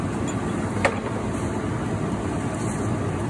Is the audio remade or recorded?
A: remade